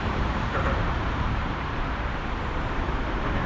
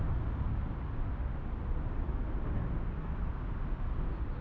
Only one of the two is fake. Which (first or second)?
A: first